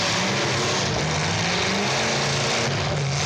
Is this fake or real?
real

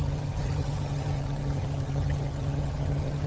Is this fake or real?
fake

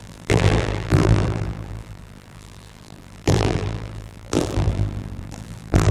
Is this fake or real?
fake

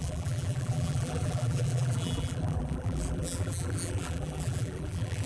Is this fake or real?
fake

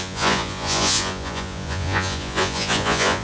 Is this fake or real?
fake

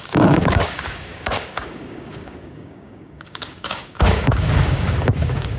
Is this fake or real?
fake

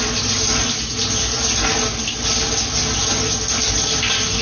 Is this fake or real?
real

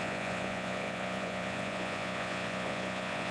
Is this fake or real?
fake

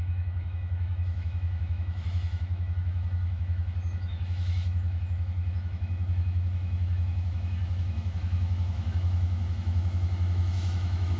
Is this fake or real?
fake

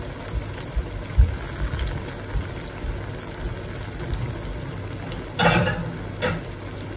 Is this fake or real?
real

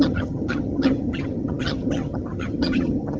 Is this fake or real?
fake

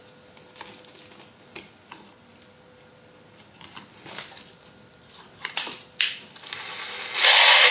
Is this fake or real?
real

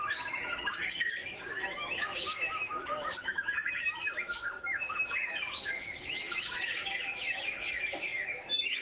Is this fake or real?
fake